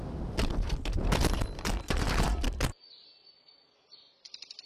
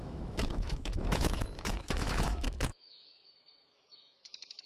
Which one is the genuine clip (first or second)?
first